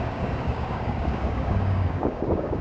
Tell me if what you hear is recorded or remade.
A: remade